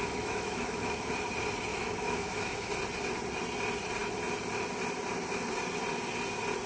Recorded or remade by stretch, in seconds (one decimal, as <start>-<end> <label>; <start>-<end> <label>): 0.0-1.1 remade; 1.1-1.7 recorded; 1.7-2.7 remade; 2.7-6.7 recorded